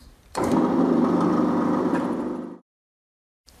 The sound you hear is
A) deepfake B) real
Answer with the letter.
A